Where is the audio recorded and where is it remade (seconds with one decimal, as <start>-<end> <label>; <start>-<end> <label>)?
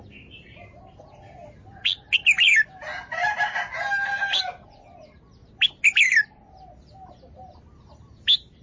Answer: 0.0-8.6 recorded